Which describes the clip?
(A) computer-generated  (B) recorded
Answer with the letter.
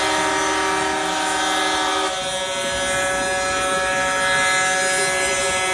B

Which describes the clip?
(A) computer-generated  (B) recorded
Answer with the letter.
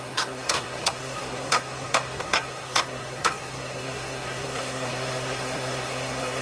A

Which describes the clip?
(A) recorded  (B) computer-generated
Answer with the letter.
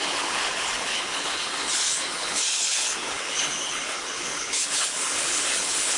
B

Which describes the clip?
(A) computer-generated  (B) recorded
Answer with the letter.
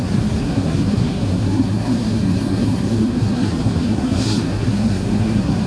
A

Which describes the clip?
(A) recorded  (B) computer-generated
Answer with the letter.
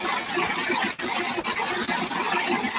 A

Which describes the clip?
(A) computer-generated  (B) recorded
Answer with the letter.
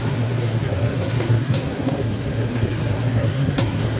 A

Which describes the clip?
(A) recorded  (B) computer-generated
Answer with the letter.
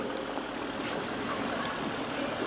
A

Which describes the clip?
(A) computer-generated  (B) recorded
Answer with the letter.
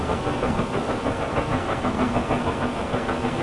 A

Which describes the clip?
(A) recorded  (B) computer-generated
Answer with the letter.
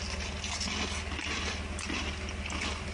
A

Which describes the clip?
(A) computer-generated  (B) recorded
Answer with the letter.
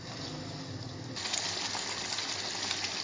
B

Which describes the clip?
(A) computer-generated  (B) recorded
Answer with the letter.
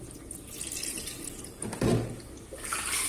B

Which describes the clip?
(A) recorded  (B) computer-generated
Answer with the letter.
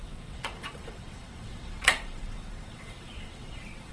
B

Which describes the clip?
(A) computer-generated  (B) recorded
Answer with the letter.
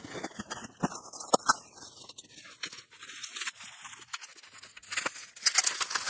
B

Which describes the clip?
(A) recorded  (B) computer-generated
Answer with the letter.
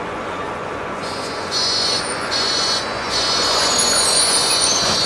B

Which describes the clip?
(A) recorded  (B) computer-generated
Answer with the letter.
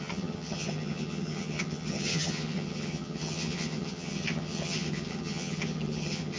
B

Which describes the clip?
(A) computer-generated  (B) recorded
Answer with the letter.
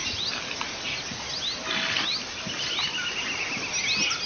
B